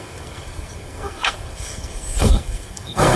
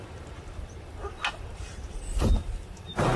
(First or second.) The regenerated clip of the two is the first